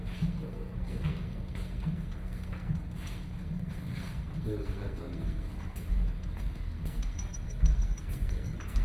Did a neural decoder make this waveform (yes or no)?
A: yes